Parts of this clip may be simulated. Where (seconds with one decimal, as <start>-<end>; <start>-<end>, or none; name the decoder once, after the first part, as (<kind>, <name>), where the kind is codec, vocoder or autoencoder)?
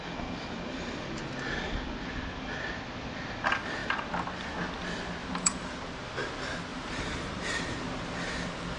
5.2-5.8 (vocoder, BigVGAN v2); 6.7-7.6